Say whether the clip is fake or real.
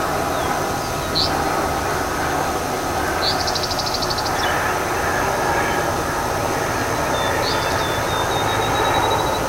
real